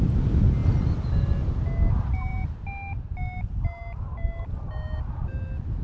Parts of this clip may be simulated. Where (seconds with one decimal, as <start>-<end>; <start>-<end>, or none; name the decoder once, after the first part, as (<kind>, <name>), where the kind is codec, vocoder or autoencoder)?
none